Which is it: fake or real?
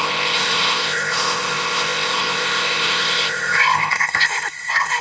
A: fake